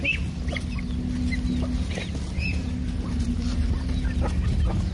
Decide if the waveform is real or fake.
real